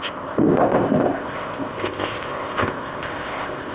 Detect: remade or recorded remade